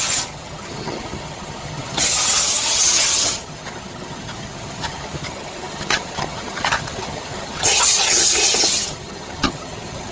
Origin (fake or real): fake